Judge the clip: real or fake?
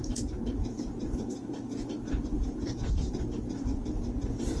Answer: real